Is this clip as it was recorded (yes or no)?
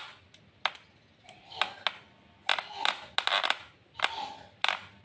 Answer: yes